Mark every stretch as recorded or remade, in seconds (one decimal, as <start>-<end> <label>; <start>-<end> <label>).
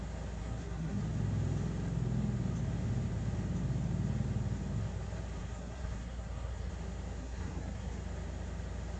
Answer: 0.0-0.4 recorded; 0.4-1.0 remade; 1.0-5.4 recorded; 5.4-6.7 remade; 6.7-7.2 recorded; 7.2-8.0 remade; 8.0-9.0 recorded